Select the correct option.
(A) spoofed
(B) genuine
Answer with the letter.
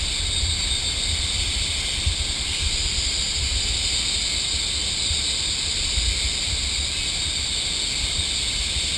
B